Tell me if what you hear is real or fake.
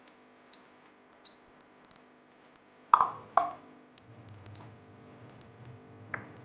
real